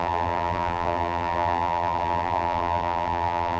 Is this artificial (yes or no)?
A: yes